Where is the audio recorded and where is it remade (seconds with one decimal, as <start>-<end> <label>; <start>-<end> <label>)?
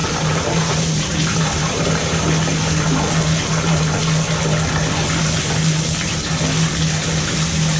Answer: 0.0-2.2 remade; 2.2-7.8 recorded